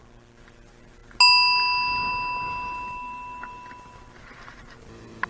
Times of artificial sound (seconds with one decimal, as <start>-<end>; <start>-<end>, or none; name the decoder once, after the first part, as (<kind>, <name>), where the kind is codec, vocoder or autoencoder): none

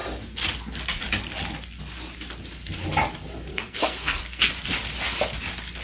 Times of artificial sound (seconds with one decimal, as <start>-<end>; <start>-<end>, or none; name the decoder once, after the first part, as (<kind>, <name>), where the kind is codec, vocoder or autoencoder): 3.5-4.5 (codec, SNAC)